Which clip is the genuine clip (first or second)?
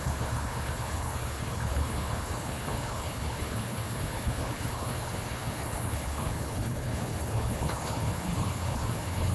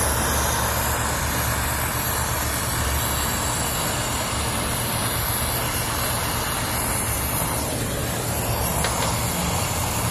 second